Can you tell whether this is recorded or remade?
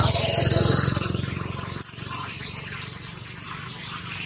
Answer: recorded